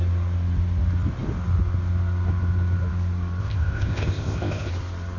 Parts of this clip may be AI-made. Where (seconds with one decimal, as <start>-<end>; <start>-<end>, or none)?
3.4-4.7